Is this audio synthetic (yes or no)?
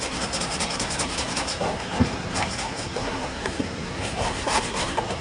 yes